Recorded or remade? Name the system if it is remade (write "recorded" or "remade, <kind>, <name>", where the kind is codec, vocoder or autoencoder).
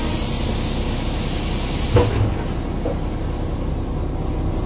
recorded